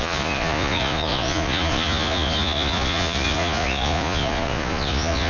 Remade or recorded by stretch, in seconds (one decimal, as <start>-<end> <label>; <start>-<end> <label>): 0.0-5.3 remade